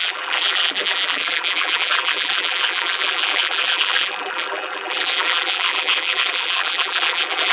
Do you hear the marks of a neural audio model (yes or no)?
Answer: yes